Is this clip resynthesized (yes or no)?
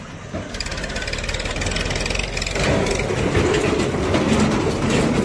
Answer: no